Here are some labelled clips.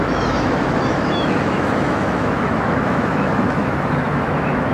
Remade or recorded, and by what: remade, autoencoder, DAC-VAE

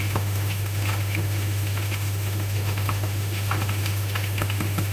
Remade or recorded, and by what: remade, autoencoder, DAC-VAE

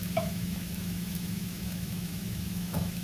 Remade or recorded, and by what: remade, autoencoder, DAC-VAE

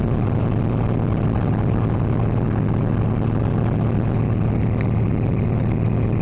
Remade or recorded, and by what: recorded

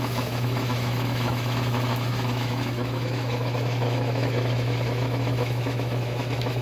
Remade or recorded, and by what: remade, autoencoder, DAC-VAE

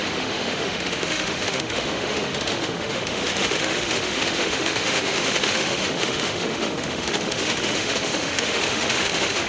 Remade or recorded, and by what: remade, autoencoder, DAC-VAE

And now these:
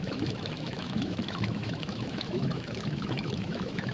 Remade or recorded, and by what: remade, autoencoder, DAC-VAE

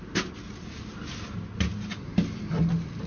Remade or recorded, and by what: recorded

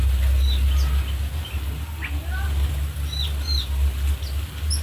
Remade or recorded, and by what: recorded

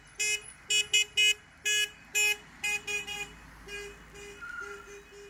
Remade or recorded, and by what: recorded